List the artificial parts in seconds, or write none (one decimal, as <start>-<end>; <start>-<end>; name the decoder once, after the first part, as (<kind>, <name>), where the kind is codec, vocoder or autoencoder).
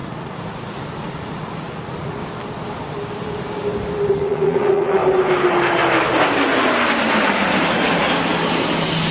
0.0-2.2 (vocoder, Vocos); 4.1-5.0